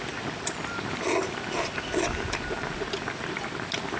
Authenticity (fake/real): real